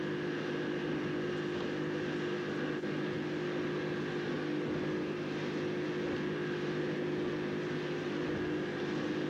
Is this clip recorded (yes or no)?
yes